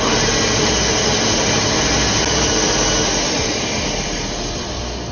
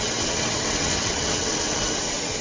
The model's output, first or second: second